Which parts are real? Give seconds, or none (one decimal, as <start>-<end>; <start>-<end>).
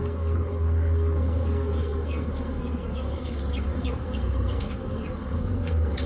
none